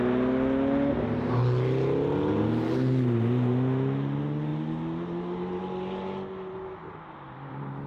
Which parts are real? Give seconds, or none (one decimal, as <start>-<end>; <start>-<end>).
0.0-7.9